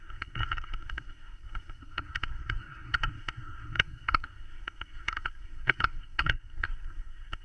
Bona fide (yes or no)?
no